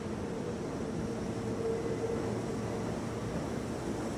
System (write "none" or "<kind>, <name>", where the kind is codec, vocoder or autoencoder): none